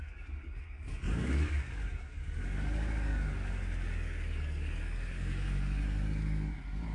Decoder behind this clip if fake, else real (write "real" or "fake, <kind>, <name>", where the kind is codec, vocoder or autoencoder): fake, codec, DAC